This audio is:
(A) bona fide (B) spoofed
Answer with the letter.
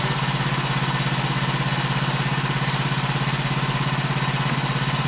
A